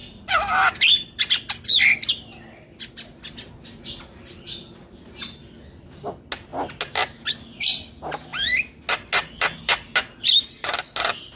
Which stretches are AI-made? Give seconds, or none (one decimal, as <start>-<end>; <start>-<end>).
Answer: none